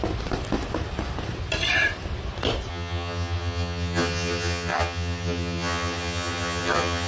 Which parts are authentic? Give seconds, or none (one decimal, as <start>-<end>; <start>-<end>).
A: 0.0-2.7